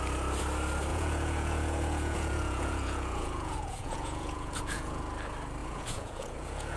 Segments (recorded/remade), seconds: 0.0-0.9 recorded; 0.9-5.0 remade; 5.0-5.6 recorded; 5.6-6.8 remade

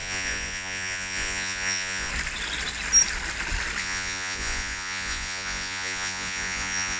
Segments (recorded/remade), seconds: 0.0-2.1 remade; 2.1-3.8 recorded; 3.8-7.0 remade

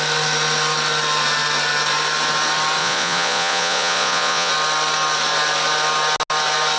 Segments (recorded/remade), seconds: 0.0-2.8 recorded; 2.8-4.5 remade; 4.5-6.8 recorded

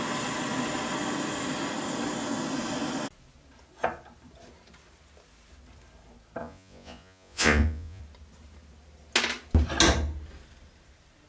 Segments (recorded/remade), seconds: 0.0-6.4 recorded; 6.4-8.0 remade; 8.0-11.3 recorded

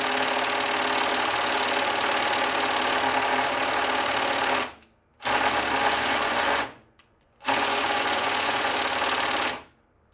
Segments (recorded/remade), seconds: 0.0-5.8 recorded; 5.8-8.7 remade; 8.7-10.1 recorded

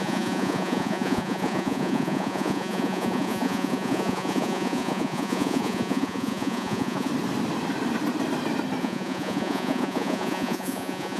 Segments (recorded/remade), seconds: 0.0-7.1 remade; 7.1-8.8 recorded; 8.8-11.2 remade